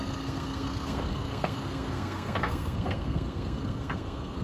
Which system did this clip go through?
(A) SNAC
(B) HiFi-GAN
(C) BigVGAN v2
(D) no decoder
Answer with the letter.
A